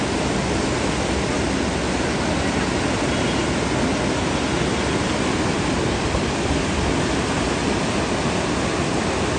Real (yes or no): yes